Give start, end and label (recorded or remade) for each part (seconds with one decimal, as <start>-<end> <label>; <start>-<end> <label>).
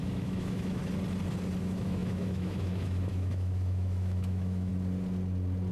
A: 0.0-0.8 remade; 0.8-1.6 recorded; 1.6-4.7 remade; 4.7-5.7 recorded